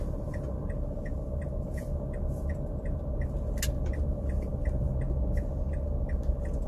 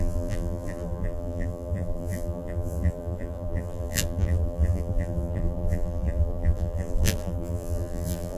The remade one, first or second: second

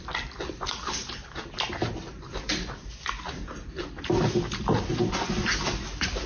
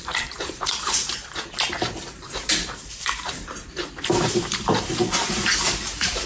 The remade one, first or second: second